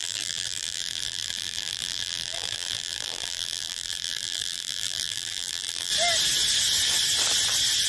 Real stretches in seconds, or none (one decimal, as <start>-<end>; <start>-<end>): 5.9-7.9

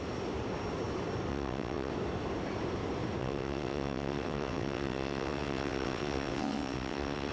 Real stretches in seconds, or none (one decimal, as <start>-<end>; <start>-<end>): 0.0-1.3; 1.9-3.2

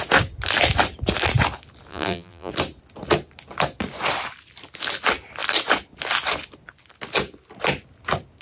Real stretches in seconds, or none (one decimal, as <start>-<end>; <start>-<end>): 0.0-1.9; 2.5-8.4

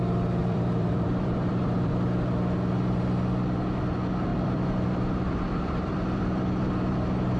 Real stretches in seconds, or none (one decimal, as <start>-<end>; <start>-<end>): 0.0-0.4; 1.9-4.3; 6.9-7.4